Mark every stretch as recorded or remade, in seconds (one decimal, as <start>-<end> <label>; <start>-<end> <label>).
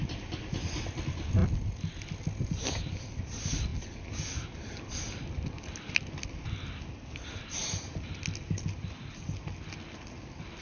0.0-10.6 recorded